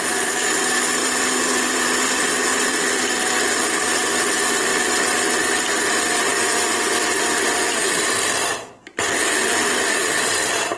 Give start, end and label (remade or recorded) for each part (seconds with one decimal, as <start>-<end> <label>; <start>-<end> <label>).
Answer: 0.0-1.0 recorded; 1.0-2.2 remade; 2.2-10.8 recorded